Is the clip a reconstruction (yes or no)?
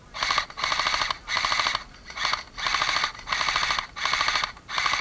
no